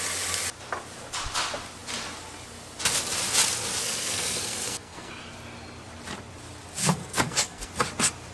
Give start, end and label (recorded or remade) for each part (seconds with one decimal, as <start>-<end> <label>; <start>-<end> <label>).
0.0-3.8 recorded; 3.8-5.1 remade; 5.1-6.8 recorded; 6.8-7.7 remade; 7.7-8.3 recorded